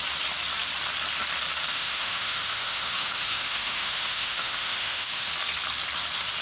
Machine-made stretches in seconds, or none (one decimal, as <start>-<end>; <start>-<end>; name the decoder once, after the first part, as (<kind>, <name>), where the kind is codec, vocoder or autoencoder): 1.7-5.3 (autoencoder, DAC-VAE)